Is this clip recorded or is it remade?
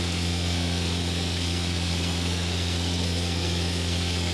remade